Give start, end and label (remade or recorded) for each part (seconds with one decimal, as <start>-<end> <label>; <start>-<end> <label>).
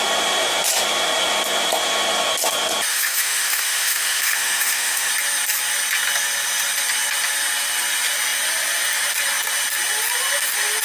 0.0-2.9 recorded; 2.9-5.1 remade; 5.1-10.8 recorded